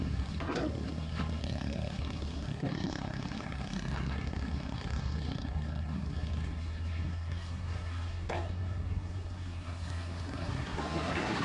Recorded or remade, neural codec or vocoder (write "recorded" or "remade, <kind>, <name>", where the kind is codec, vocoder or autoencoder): remade, codec, SNAC